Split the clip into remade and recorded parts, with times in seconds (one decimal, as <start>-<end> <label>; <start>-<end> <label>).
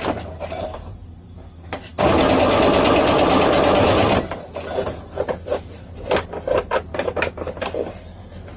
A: 0.0-6.9 recorded; 6.9-7.6 remade; 7.6-8.6 recorded